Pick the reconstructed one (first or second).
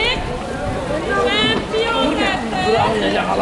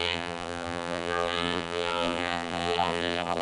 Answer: second